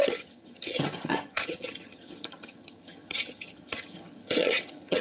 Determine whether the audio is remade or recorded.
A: remade